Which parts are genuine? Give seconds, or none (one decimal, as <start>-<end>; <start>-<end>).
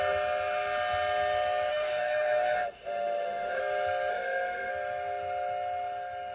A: 0.0-1.7; 3.6-4.1; 4.7-6.3